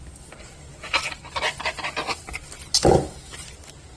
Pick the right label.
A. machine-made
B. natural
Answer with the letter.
B